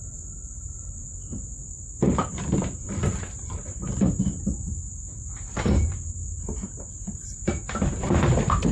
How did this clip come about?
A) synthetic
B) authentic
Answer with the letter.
A